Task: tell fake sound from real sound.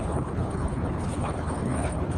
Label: fake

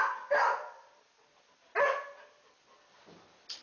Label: real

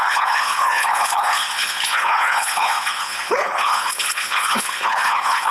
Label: fake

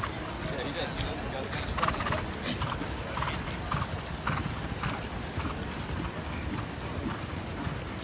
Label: real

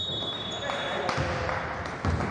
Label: real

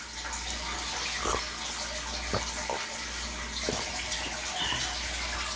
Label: real